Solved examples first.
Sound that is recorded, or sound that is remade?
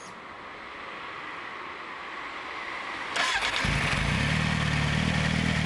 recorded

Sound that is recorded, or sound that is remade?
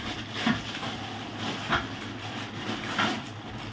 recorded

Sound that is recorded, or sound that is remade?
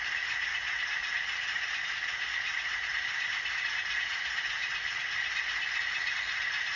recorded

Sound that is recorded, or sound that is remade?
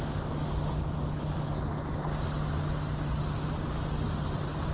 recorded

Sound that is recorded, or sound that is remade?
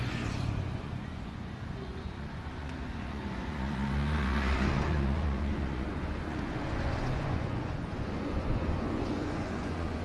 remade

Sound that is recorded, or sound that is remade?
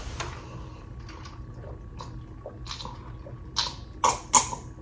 recorded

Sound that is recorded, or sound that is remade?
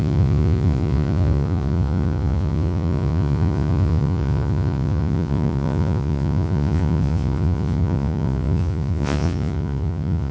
remade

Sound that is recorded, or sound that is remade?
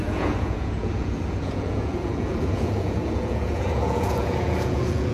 remade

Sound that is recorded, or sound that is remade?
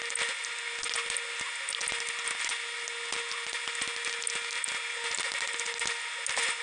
recorded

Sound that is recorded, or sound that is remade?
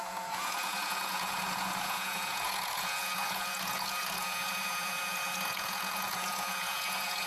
remade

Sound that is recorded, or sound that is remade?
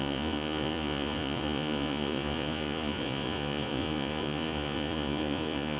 remade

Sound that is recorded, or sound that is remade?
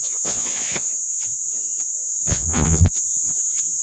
remade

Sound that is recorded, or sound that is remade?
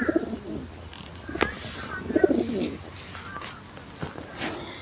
recorded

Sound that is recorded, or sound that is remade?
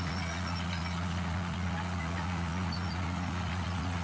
remade